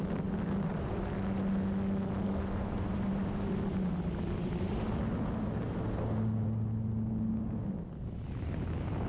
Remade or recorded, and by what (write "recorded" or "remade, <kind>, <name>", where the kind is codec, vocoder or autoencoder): recorded